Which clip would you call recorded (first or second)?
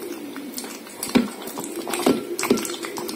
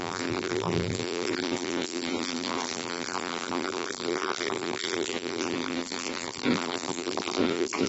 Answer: first